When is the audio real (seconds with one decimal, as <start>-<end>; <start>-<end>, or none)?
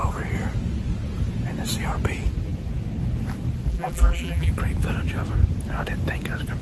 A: 0.0-3.7; 4.5-6.6